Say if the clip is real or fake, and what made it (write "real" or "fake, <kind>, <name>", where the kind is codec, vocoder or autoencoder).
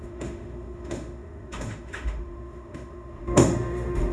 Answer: fake, autoencoder, DAC-VAE